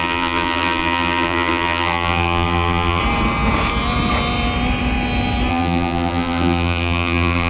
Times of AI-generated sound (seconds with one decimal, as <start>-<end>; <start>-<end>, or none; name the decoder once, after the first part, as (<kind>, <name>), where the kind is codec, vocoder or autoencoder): 0.0-3.0 (vocoder, BigVGAN v2); 5.5-7.5